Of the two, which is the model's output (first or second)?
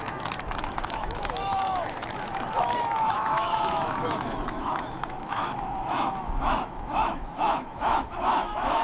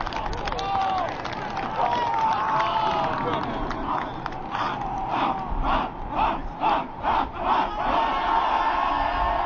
first